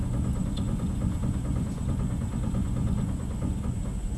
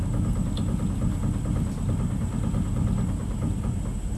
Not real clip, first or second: first